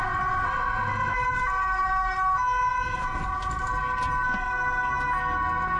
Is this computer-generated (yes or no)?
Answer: no